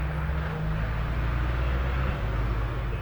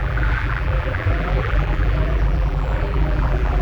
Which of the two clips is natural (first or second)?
first